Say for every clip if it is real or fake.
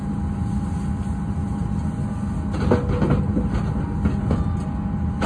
real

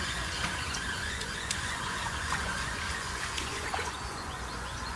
fake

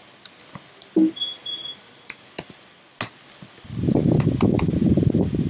real